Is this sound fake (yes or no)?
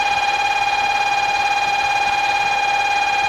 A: no